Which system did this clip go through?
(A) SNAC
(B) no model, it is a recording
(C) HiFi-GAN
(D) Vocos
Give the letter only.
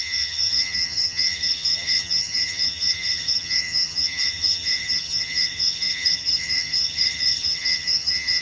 C